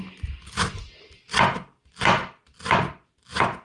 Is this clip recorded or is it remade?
recorded